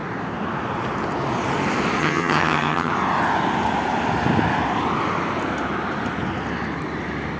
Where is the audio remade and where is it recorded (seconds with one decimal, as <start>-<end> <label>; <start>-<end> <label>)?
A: 0.0-2.0 recorded; 2.0-2.9 remade; 2.9-7.4 recorded